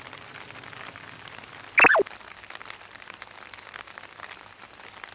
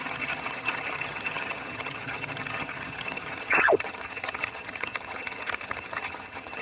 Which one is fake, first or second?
second